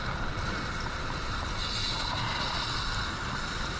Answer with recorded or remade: recorded